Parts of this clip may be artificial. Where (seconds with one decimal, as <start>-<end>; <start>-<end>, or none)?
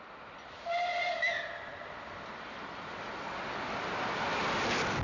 none